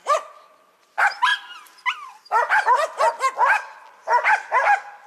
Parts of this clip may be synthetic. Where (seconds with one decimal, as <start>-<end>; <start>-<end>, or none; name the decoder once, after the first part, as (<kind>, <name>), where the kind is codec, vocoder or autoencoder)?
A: none